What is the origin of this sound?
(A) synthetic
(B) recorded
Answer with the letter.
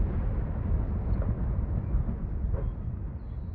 B